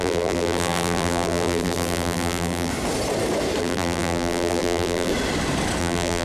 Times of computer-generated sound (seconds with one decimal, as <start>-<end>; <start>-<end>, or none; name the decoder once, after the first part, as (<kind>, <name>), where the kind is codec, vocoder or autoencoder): 0.0-2.7 (vocoder, BigVGAN v2); 3.6-5.1; 5.8-6.2